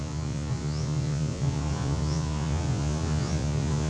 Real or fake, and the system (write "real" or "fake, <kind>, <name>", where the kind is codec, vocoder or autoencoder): fake, vocoder, Vocos